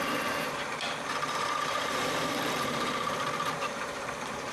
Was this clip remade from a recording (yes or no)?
yes